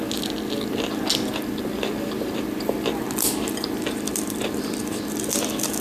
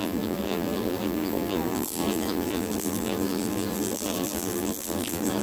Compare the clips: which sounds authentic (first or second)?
first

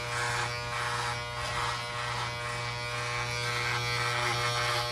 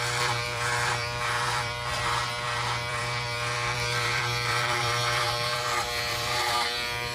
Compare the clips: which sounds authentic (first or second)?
first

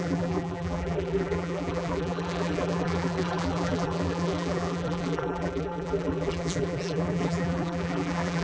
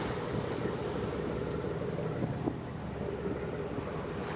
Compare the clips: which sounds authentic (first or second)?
second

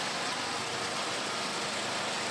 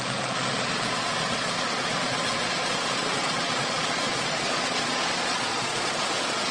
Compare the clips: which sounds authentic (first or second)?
first